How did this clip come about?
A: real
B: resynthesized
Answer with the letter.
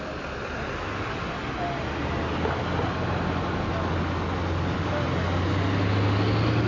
A